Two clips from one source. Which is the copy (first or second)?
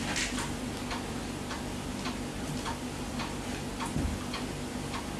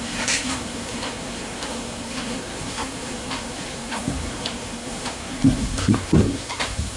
second